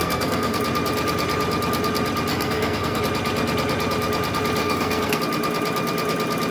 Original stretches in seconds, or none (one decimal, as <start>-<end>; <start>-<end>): 0.6-2.3; 3.0-4.6; 5.2-6.5

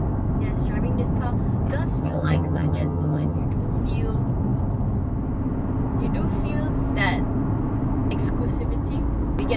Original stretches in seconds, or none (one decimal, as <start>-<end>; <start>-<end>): 0.0-2.0; 3.4-9.6

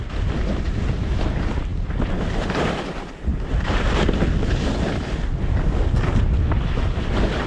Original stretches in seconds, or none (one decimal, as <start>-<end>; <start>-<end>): 0.0-7.5